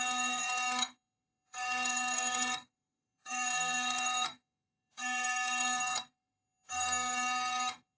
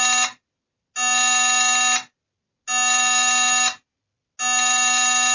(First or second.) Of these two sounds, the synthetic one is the first